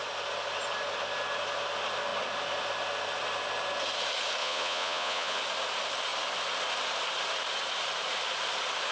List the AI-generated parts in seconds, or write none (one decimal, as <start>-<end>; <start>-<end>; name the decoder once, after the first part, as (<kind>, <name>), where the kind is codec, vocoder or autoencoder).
4.4-5.4 (vocoder, Vocos)